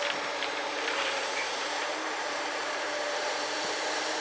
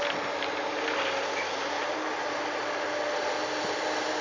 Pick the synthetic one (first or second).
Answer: first